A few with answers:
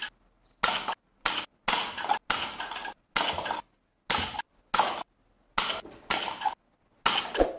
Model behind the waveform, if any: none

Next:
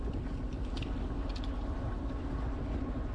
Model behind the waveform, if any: none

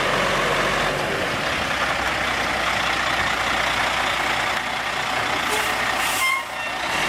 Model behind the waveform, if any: none